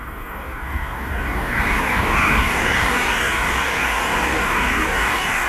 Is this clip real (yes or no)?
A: no